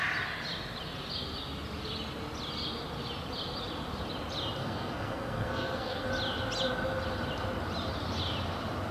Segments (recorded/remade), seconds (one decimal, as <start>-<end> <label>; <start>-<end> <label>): 0.0-4.6 recorded; 4.6-6.1 remade; 6.1-8.9 recorded

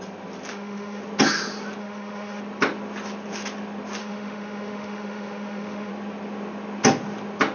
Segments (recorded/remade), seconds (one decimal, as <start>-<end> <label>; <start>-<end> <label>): 0.0-0.5 recorded; 0.5-1.0 remade; 1.0-1.8 recorded; 1.8-2.4 remade; 2.4-4.0 recorded; 4.0-5.9 remade; 5.9-7.5 recorded

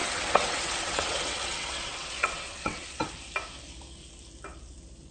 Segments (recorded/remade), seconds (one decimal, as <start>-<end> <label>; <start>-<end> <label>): 0.0-3.1 remade; 3.1-5.1 recorded

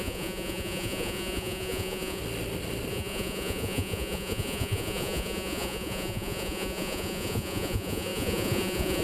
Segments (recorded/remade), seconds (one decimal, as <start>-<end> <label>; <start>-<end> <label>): 0.0-2.2 remade; 2.2-2.9 recorded; 2.9-9.0 remade

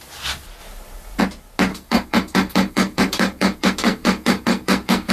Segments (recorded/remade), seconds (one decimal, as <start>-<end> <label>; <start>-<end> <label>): 0.0-1.7 recorded; 1.7-5.1 remade